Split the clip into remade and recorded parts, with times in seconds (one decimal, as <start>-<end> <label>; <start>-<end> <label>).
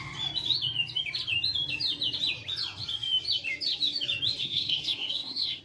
0.0-4.4 recorded; 4.4-5.6 remade